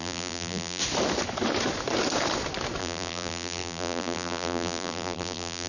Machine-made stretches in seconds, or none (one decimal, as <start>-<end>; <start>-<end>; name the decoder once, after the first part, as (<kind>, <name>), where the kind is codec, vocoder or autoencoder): 0.0-0.8 (vocoder, BigVGAN v2); 2.8-5.7